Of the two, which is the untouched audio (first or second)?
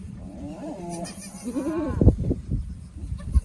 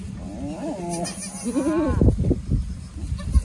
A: second